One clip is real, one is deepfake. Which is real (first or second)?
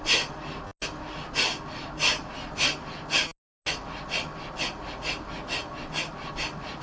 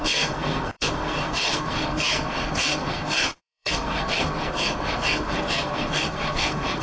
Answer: first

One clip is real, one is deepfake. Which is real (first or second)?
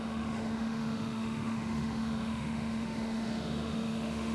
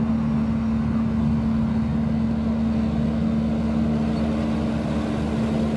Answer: second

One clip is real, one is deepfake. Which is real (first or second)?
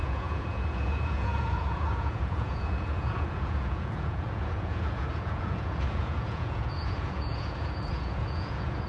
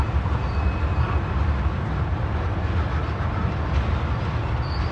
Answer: second